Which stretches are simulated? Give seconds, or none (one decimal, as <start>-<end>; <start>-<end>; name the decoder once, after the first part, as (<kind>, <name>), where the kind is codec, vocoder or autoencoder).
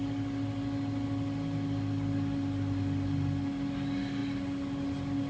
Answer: none